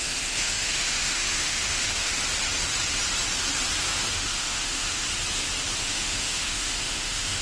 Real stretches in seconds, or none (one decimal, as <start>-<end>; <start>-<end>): 2.1-4.1; 5.1-5.8